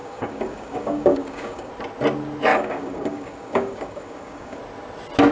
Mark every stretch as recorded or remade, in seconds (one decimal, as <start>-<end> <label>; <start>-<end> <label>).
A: 0.0-1.7 remade; 1.7-2.5 recorded; 2.5-4.6 remade; 4.6-5.3 recorded